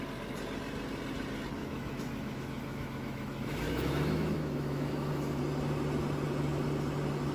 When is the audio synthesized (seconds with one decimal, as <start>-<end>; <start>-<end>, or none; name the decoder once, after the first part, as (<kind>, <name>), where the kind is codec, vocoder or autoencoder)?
1.6-5.4 (autoencoder, DAC-VAE)